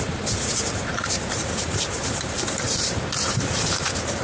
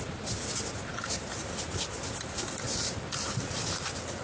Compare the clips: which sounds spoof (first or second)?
first